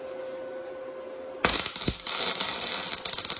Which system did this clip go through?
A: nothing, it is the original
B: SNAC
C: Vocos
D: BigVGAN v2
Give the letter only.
A